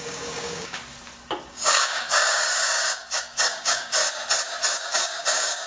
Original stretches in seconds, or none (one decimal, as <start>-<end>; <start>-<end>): 0.8-1.5; 4.0-4.8